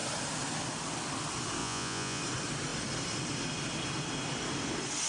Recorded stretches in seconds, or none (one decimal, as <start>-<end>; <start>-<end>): 0.0-1.6; 2.2-5.1